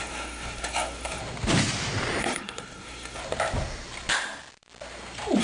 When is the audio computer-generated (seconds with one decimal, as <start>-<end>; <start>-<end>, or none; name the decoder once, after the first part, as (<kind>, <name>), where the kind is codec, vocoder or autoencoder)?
0.0-1.2 (codec, SNAC); 2.2-3.2